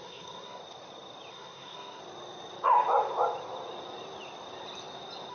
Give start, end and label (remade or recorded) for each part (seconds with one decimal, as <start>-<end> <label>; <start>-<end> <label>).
0.0-0.6 remade; 0.6-1.3 recorded; 1.3-2.0 remade; 2.0-5.3 recorded